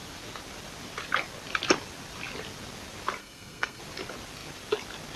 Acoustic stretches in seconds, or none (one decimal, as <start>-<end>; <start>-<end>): 0.0-3.2; 3.8-5.2